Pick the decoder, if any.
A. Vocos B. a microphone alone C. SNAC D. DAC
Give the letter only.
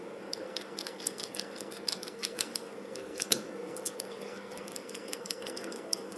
C